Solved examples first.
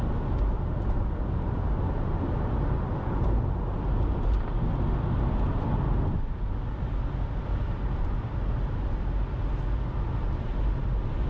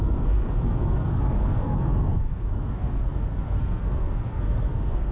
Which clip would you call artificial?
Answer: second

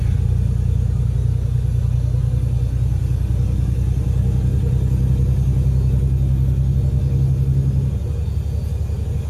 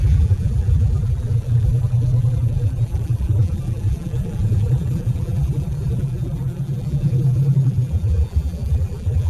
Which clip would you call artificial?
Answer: second